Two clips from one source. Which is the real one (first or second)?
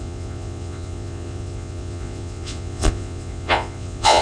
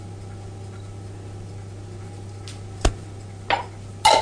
second